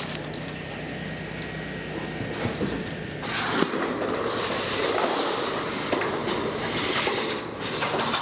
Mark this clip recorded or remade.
recorded